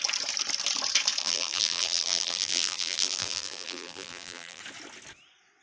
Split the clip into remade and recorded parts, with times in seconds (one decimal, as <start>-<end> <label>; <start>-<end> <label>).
0.0-1.2 recorded; 1.2-4.6 remade; 4.6-5.6 recorded

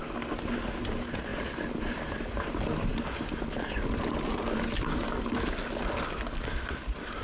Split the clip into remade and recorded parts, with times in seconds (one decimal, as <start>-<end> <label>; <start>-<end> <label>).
0.0-7.2 recorded

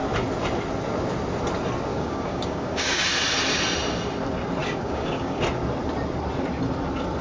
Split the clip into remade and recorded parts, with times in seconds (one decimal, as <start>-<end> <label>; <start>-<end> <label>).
0.0-1.9 recorded; 1.9-3.0 remade; 3.0-4.6 recorded; 4.6-5.4 remade; 5.4-7.2 recorded

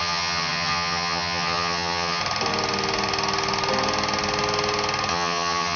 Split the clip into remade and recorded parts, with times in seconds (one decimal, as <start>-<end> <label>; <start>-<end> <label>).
0.0-2.2 remade; 2.2-5.1 recorded; 5.1-5.8 remade

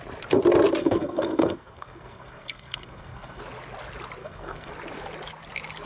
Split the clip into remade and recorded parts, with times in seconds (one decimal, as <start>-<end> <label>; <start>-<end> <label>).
0.0-0.8 recorded; 0.8-3.4 remade; 3.4-4.2 recorded; 4.2-4.7 remade; 4.7-5.9 recorded